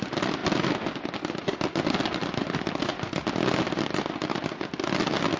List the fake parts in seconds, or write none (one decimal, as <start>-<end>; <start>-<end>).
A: none